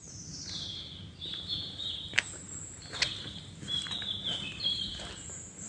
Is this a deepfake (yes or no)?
yes